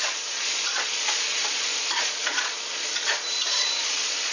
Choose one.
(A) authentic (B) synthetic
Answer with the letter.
B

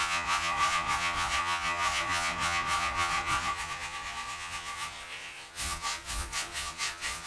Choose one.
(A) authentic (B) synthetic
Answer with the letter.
B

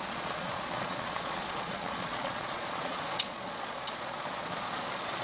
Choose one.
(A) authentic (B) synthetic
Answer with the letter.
B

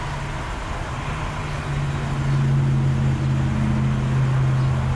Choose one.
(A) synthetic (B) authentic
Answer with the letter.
B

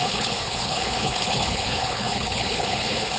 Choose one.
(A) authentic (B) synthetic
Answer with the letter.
B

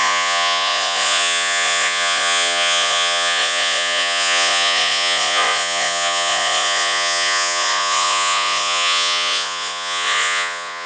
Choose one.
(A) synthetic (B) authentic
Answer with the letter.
A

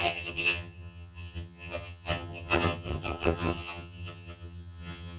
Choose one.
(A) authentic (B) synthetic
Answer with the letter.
B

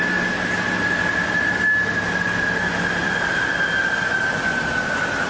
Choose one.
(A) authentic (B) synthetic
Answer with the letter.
A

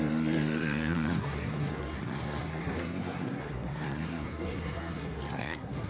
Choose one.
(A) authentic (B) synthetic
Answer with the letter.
B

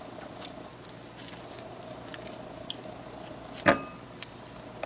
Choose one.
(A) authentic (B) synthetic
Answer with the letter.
A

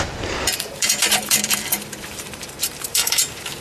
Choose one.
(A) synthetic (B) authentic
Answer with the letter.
A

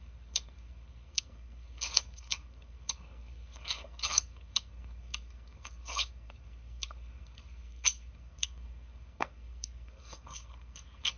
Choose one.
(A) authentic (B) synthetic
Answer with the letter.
B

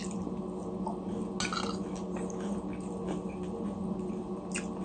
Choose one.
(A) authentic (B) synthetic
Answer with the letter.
A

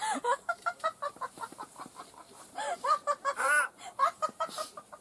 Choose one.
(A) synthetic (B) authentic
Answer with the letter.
A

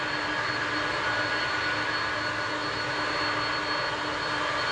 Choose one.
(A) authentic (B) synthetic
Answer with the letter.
A